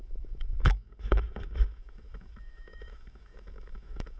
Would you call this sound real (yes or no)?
no